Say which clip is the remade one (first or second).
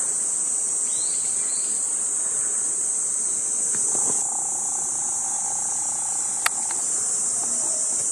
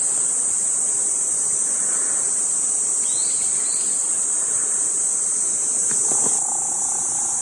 second